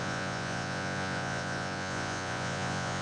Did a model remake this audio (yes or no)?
yes